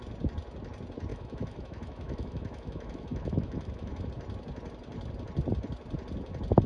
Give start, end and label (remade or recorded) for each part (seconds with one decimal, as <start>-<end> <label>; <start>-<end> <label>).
0.0-1.1 recorded; 1.1-4.1 remade; 4.1-6.7 recorded